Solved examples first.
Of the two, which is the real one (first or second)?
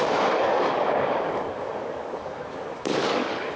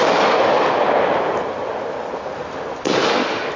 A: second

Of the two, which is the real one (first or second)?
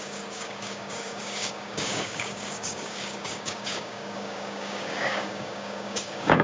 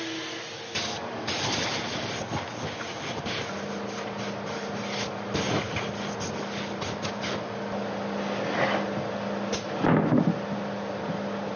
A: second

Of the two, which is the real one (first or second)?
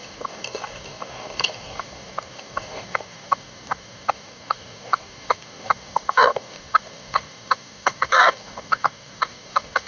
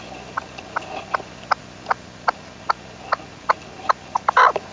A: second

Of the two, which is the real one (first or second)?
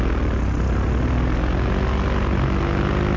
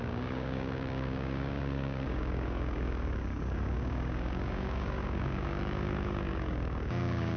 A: first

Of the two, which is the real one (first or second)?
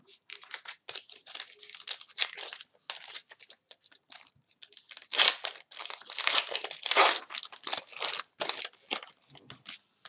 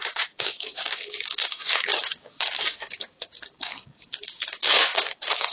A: first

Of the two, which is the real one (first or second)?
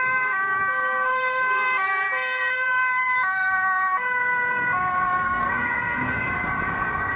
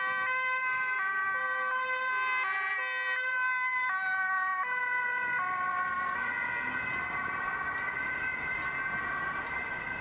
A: second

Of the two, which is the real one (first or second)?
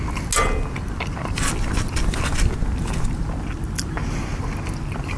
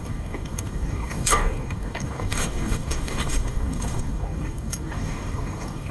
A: first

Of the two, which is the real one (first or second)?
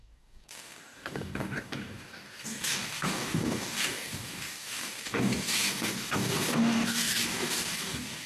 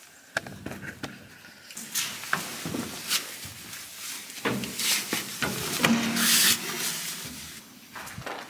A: second